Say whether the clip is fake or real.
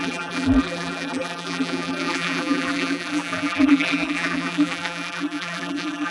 fake